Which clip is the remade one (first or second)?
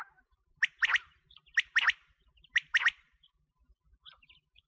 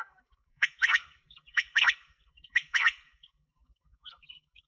second